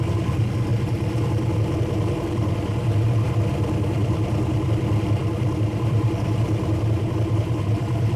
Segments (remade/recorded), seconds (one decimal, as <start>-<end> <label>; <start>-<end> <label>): 0.0-0.7 remade; 0.7-2.2 recorded; 2.2-8.2 remade